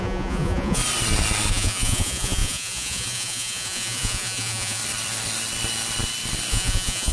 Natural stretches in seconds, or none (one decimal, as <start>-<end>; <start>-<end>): 0.8-1.5; 4.8-6.5